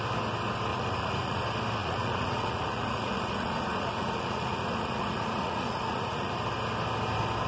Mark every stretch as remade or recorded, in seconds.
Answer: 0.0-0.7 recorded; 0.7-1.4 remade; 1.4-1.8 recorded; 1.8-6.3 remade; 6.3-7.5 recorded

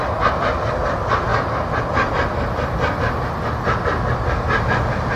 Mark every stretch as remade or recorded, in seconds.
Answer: 0.0-5.2 recorded

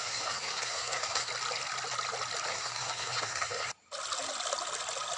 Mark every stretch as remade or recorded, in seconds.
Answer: 0.0-1.3 remade; 1.3-2.5 recorded; 2.5-3.7 remade; 3.7-5.2 recorded

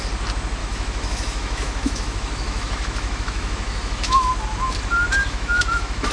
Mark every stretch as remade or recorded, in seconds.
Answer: 0.0-0.6 recorded; 0.6-4.3 remade; 4.3-5.2 recorded; 5.2-6.1 remade

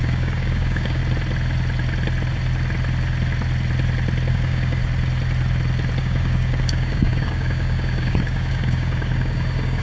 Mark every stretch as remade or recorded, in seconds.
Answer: 0.0-1.0 remade; 1.0-4.3 recorded; 4.3-4.8 remade; 4.8-6.0 recorded; 6.0-9.8 remade

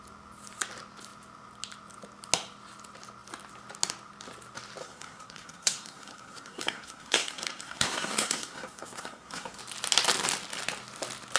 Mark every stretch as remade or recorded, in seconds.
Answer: 0.0-4.8 recorded; 4.8-9.6 remade; 9.6-11.4 recorded

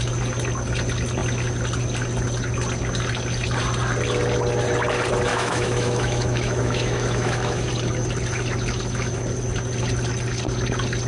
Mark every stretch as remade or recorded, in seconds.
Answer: 0.0-5.3 recorded; 5.3-7.7 remade; 7.7-11.1 recorded

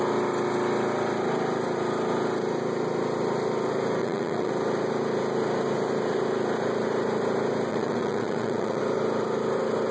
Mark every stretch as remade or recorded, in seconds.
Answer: 0.0-4.0 recorded; 4.0-4.5 remade; 4.5-7.7 recorded; 7.7-8.8 remade; 8.8-9.9 recorded